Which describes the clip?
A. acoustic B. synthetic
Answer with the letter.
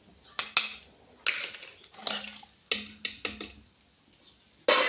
A